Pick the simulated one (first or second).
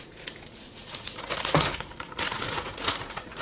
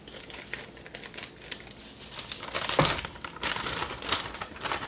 first